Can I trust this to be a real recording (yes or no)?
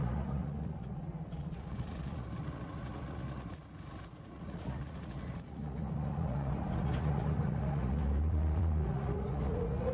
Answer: no